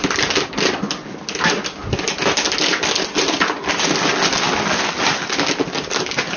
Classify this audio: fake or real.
real